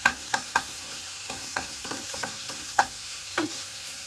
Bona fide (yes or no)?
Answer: no